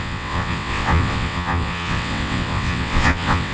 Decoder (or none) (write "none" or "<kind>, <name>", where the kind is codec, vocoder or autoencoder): vocoder, WaveNeXt